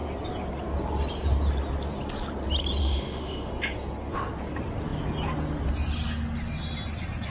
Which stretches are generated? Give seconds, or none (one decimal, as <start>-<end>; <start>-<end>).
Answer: 2.8-3.5